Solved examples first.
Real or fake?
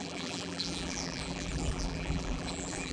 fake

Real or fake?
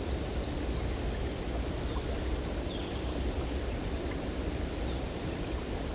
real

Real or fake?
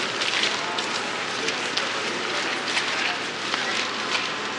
real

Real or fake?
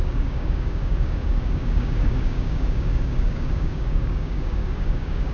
fake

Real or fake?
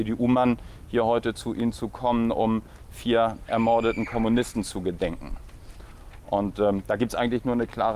real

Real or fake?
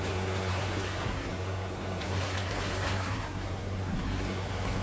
fake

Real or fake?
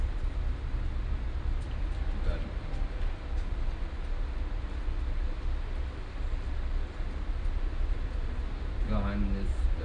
real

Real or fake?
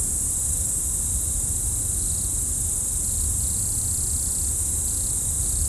real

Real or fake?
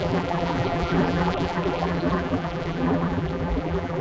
fake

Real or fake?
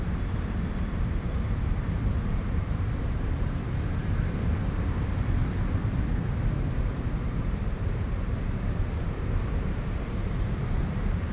fake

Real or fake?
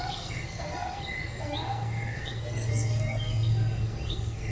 fake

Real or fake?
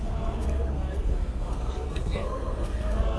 fake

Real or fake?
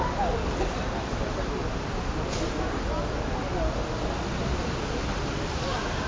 real